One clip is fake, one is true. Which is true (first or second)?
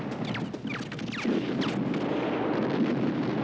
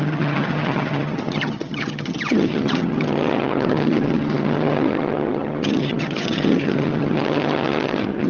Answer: first